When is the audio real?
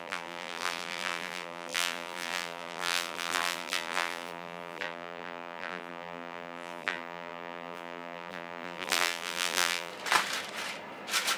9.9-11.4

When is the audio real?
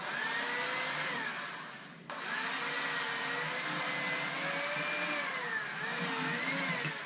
0.0-7.1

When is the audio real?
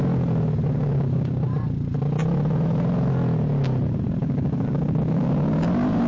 0.0-0.8; 1.3-4.2; 5.3-6.1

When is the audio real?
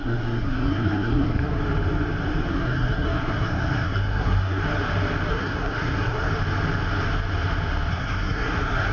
1.6-2.5; 4.6-5.3; 6.3-7.9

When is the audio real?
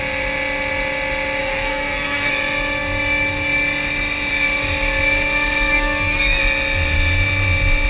0.0-1.4; 2.3-5.7; 6.4-7.9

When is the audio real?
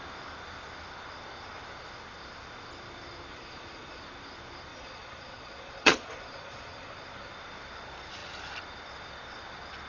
0.0-3.3; 4.0-4.7; 7.0-9.9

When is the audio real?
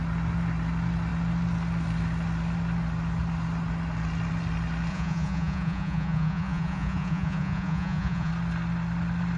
0.0-4.9; 8.3-9.4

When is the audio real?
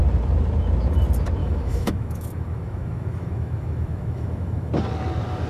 0.0-1.4; 4.7-5.5